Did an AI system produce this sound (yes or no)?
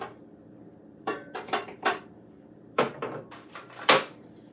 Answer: yes